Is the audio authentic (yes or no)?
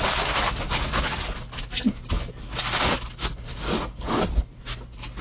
yes